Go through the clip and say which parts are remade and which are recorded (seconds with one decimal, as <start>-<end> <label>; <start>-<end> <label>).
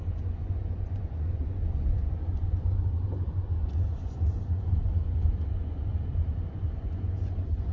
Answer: 0.0-5.9 remade; 5.9-6.5 recorded; 6.5-7.7 remade